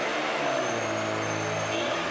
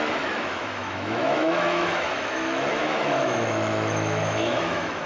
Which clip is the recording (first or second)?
first